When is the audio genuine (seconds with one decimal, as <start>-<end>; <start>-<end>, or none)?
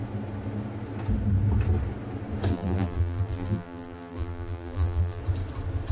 0.0-2.5; 5.2-5.9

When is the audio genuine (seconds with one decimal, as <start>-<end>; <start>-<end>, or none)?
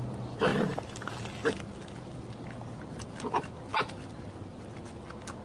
0.0-5.4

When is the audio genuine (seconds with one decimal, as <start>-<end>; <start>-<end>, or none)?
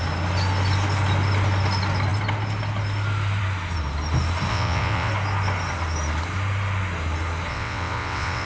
0.0-4.5; 5.1-7.5